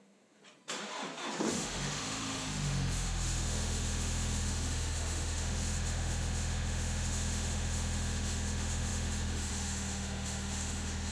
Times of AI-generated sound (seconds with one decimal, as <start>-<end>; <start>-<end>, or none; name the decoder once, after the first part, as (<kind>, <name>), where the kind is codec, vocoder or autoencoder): 0.0-0.4 (autoencoder, DAC-VAE); 1.5-11.1